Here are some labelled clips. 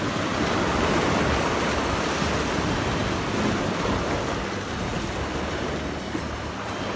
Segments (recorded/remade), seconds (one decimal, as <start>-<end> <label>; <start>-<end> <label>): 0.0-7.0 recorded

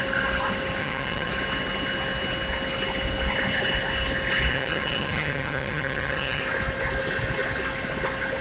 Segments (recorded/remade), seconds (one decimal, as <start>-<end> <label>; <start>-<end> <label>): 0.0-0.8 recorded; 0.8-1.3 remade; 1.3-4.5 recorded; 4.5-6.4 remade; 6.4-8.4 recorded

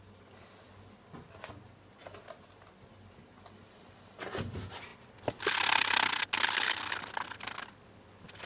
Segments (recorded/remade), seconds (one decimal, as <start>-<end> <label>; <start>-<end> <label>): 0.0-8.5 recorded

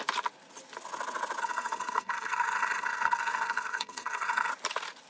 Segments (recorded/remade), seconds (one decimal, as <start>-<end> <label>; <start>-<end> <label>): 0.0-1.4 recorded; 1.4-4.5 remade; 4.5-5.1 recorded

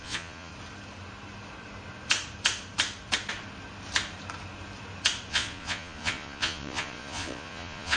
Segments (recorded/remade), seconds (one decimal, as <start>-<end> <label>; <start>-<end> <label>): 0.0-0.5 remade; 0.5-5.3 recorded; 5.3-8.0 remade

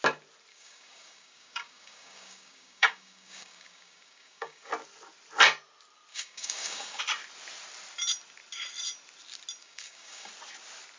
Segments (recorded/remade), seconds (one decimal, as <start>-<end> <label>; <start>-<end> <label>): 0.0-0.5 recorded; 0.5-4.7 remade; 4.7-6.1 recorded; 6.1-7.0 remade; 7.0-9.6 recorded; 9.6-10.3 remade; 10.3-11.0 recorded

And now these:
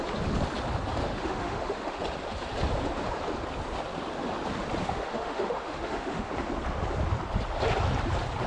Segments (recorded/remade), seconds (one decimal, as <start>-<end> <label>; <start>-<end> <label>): 0.0-1.1 recorded; 1.1-2.0 remade; 2.0-4.8 recorded; 4.8-6.3 remade; 6.3-8.5 recorded

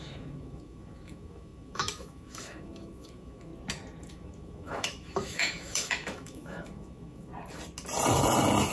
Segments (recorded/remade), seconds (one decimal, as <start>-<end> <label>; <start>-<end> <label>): 0.0-3.5 remade; 3.5-4.1 recorded; 4.1-7.3 remade; 7.3-8.7 recorded